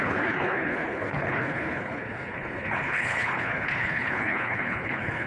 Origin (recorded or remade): remade